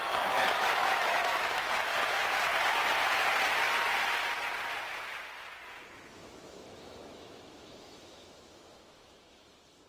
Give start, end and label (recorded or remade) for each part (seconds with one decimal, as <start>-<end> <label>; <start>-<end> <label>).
0.0-2.2 remade; 2.2-6.1 recorded; 6.1-9.9 remade